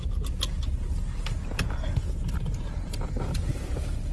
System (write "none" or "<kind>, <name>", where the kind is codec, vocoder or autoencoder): vocoder, BigVGAN v2